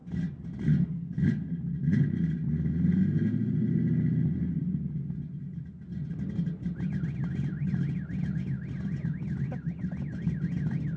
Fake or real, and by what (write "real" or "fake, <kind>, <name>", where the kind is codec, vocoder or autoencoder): real